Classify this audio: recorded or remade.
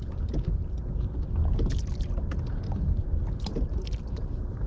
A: recorded